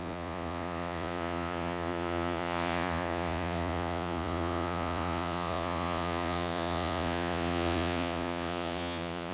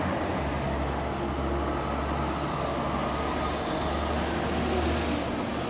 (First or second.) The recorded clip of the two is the second